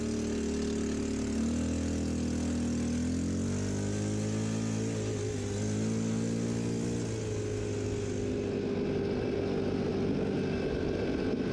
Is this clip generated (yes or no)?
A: no